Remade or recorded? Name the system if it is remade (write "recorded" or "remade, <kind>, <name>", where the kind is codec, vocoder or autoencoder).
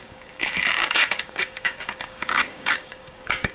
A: remade, codec, DAC